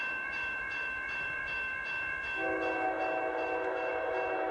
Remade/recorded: remade